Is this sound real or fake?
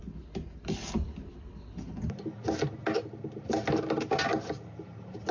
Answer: real